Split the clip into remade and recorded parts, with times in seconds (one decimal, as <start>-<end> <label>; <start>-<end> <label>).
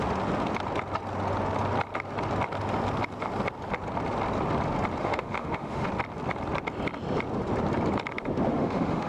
0.0-5.0 recorded; 5.0-5.9 remade; 5.9-8.5 recorded; 8.5-9.1 remade